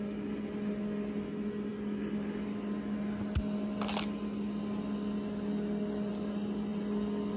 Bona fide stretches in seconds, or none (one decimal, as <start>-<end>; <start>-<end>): 0.0-7.4